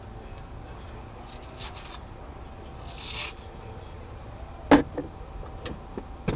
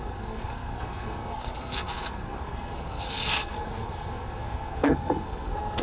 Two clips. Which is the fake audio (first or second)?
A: second